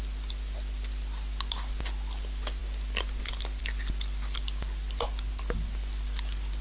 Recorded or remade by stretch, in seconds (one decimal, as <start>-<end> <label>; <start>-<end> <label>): 0.0-6.6 recorded